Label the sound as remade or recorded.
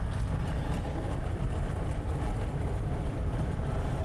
remade